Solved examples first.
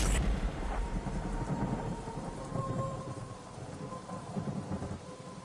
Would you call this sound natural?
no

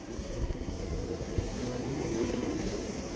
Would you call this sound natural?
no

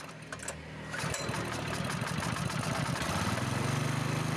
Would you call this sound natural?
yes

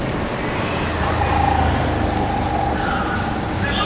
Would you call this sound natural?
yes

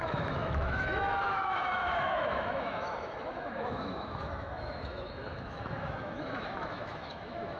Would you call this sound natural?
no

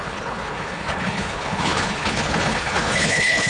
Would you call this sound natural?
no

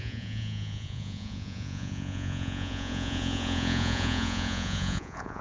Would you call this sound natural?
no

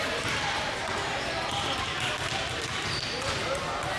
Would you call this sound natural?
yes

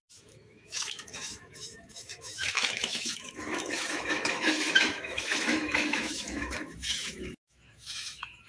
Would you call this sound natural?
no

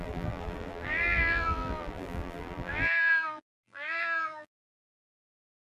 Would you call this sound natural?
no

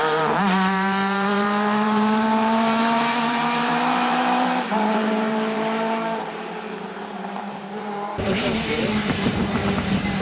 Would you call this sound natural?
no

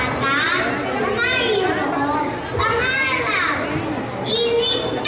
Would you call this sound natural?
yes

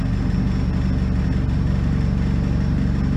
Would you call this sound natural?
yes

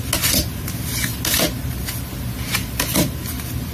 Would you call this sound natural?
yes